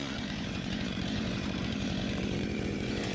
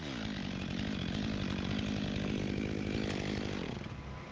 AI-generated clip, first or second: first